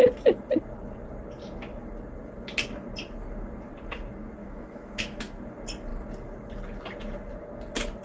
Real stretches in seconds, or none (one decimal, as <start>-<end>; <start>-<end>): 0.0-4.4; 5.2-8.0